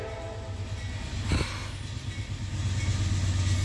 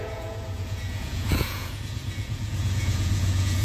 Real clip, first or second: first